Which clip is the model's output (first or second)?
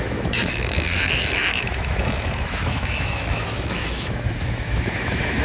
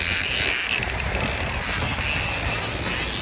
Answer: first